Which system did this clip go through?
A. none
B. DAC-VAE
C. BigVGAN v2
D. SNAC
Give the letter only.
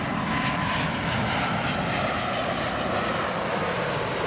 A